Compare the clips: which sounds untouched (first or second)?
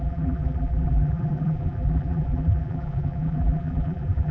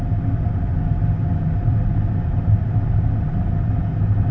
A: second